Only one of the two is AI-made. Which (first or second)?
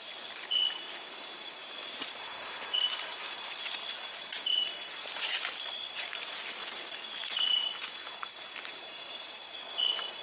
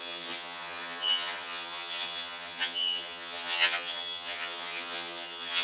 second